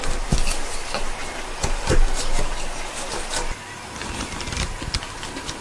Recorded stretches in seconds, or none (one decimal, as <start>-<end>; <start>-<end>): 0.0-5.6